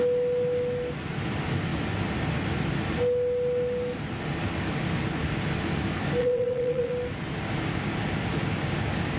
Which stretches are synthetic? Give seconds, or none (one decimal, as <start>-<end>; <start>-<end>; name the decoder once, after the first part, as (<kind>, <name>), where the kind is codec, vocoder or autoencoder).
6.2-6.9 (vocoder, WaveNeXt)